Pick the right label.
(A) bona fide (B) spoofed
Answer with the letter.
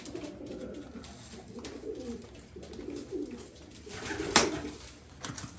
A